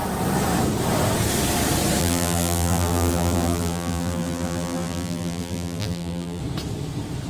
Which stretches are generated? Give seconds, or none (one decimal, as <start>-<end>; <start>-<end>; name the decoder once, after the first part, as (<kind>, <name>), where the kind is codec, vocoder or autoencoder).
2.0-6.4 (vocoder, BigVGAN v2)